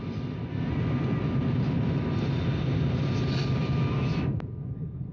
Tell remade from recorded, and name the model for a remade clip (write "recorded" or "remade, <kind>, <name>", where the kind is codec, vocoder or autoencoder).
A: recorded